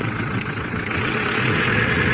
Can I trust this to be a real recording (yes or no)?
no